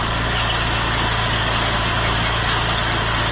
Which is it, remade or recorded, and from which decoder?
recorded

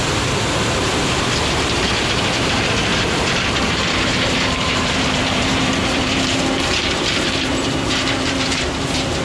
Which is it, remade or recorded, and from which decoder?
remade, vocoder, BigVGAN v2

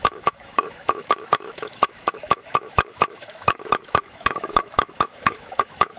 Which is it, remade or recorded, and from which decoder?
remade, autoencoder, DAC-VAE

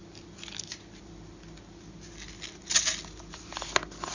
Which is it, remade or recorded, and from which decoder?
recorded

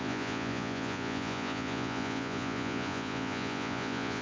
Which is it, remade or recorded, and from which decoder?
remade, vocoder, Vocos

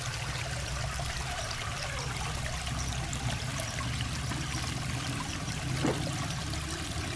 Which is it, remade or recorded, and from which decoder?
recorded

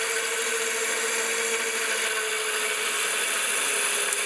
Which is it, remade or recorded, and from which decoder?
recorded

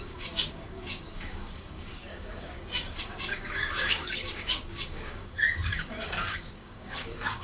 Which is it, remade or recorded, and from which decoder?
remade, codec, DAC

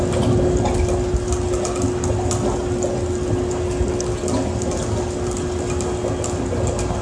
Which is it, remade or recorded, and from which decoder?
recorded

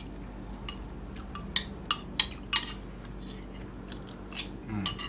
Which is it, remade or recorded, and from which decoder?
recorded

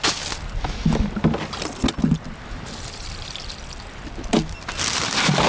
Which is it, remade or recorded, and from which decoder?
recorded